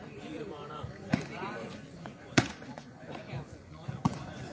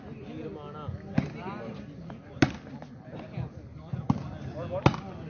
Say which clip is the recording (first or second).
second